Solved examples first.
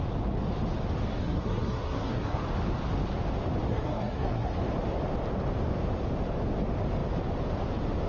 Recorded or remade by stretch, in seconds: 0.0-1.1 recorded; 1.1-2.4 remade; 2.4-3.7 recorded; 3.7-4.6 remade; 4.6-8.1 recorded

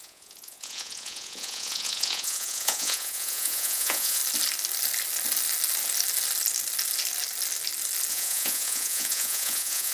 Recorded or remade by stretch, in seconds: 0.0-4.2 remade; 4.2-8.1 recorded; 8.1-9.9 remade

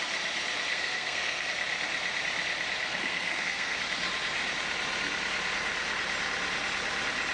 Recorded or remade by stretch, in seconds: 0.0-0.7 recorded; 0.7-1.5 remade; 1.5-2.9 recorded; 2.9-3.8 remade; 3.8-7.3 recorded

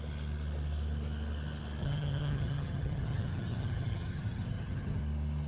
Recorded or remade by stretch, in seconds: 0.0-1.8 recorded; 1.8-5.0 remade; 5.0-5.5 recorded

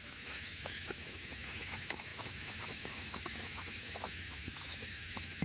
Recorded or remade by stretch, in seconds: 0.0-5.4 remade

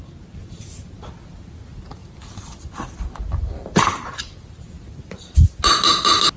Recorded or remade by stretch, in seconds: 0.0-2.0 recorded; 2.0-5.6 remade; 5.6-6.4 recorded

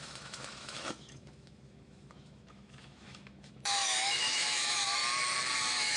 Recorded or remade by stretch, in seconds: 0.0-5.0 remade; 5.0-5.6 recorded; 5.6-6.0 remade

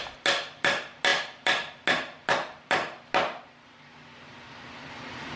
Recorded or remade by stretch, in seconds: 0.0-5.4 recorded